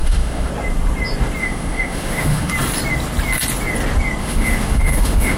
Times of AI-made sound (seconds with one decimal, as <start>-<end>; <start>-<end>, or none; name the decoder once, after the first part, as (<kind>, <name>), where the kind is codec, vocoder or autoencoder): 0.0-0.5 (autoencoder, DAC-VAE); 1.4-2.5; 4.2-5.4